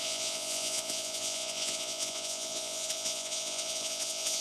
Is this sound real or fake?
fake